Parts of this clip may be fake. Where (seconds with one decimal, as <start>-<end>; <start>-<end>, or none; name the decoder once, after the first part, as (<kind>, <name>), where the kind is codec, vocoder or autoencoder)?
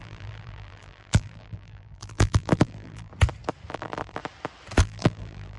0.0-3.1 (vocoder, BigVGAN v2); 3.7-4.2; 4.8-5.6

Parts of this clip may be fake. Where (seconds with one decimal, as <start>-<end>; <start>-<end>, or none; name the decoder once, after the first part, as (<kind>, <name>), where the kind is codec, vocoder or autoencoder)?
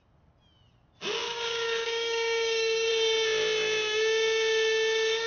1.2-2.9 (codec, DAC)